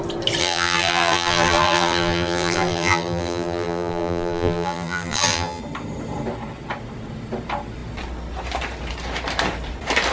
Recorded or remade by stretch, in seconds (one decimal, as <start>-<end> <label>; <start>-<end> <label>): 0.0-0.4 recorded; 0.4-5.6 remade; 5.6-10.1 recorded